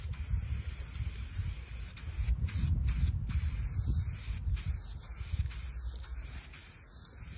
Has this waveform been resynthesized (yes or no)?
no